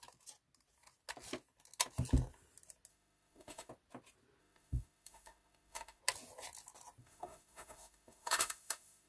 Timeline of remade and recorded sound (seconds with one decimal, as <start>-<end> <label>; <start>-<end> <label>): 0.0-2.9 recorded; 2.9-3.7 remade; 3.7-4.4 recorded; 4.4-6.0 remade; 6.0-7.0 recorded; 7.0-9.1 remade

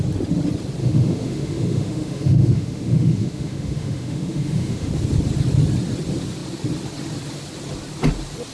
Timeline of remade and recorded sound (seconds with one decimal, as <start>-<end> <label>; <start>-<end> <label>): 0.0-0.8 recorded; 0.8-4.9 remade; 4.9-8.5 recorded

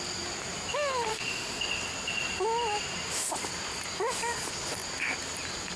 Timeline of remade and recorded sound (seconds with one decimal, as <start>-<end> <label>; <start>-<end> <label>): 0.0-1.1 recorded; 1.1-1.6 remade; 1.6-5.8 recorded

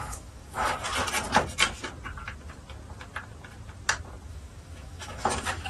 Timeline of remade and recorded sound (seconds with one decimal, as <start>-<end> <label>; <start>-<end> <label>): 0.0-0.9 remade; 0.9-4.3 recorded; 4.3-5.7 remade

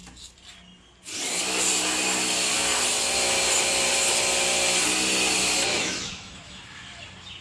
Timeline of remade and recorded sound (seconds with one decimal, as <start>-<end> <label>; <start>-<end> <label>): 0.0-5.7 recorded; 5.7-7.0 remade; 7.0-7.4 recorded